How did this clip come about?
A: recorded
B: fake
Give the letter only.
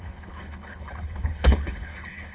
B